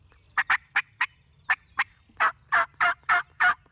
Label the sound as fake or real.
real